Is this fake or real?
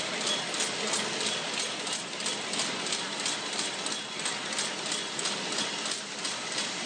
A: real